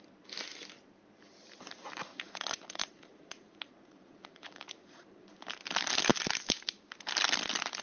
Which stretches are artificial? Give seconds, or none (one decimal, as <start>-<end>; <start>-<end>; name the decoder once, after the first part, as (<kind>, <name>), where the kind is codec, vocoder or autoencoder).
2.1-5.5 (vocoder, Vocos)